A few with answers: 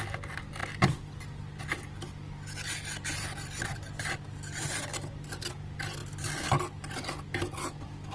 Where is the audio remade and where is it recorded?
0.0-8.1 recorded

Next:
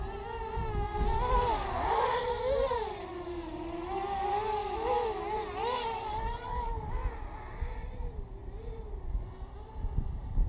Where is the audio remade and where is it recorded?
0.0-4.6 recorded; 4.6-5.2 remade; 5.2-10.5 recorded